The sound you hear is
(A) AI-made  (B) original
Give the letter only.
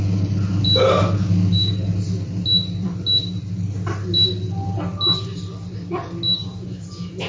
B